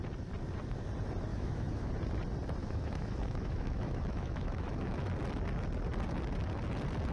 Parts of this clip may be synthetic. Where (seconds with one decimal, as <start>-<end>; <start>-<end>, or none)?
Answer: 1.3-1.9; 2.6-5.1

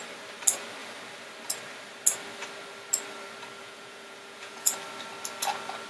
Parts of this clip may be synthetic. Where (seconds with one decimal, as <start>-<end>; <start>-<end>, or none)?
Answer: 3.6-4.7

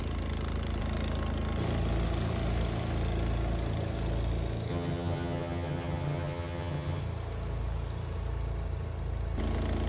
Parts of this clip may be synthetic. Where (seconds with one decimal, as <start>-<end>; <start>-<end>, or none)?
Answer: 4.7-7.0

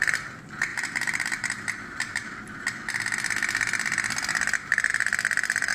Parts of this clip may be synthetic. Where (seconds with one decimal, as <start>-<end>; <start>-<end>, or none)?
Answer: 0.7-2.6

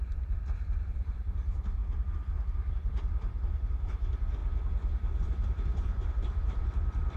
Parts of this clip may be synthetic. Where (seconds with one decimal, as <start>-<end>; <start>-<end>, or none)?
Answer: 0.0-1.8; 2.7-4.4; 5.2-7.2

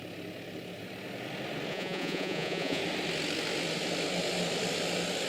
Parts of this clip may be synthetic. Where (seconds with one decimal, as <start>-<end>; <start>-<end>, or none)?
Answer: 1.7-2.8

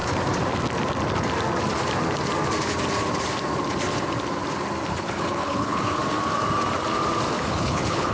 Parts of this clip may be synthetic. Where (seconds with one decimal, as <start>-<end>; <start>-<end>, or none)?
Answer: 4.9-6.0; 7.3-8.1